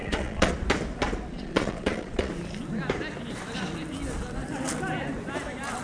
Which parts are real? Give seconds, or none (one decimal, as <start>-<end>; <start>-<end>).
0.5-1.3; 2.3-5.8